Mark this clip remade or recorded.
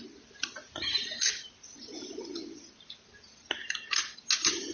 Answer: recorded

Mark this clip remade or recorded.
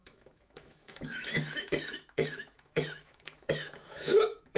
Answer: remade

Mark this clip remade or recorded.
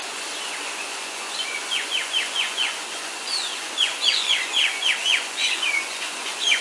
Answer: remade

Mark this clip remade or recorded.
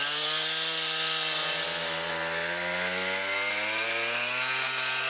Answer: recorded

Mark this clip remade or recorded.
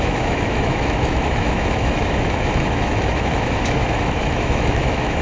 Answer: remade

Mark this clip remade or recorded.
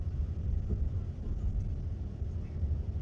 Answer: recorded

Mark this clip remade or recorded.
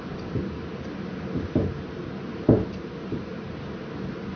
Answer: recorded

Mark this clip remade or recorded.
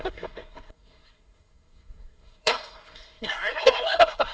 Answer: remade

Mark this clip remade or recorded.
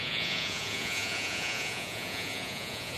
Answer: remade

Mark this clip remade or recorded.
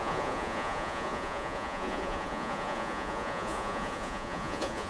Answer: remade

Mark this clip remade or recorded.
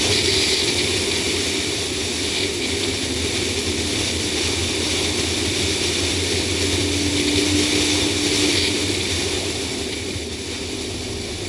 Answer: recorded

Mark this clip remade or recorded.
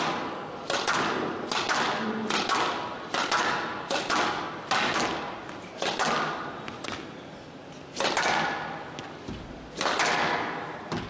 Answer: recorded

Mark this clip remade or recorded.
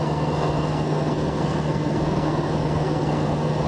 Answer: remade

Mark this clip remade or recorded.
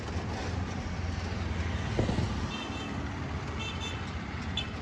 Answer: recorded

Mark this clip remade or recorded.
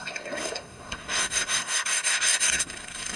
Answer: remade